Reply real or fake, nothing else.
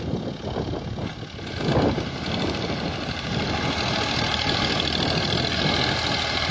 real